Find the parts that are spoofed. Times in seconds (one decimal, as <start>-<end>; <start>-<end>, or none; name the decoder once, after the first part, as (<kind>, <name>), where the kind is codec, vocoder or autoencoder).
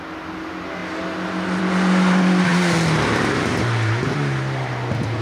none